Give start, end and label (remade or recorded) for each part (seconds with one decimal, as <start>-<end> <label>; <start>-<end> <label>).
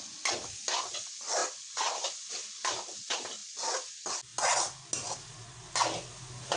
0.0-6.6 recorded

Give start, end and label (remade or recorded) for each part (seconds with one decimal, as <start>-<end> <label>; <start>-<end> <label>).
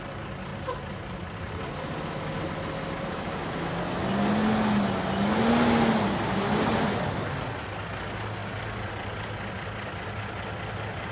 0.0-11.1 recorded